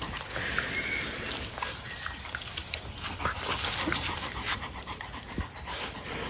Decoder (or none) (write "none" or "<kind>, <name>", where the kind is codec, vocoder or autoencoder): none